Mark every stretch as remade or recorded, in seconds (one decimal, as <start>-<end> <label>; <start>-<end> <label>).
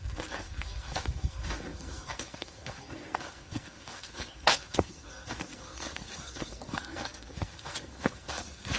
0.0-8.8 remade